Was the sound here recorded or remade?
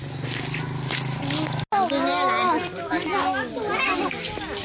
recorded